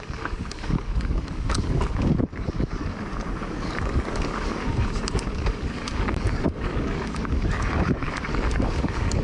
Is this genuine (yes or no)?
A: no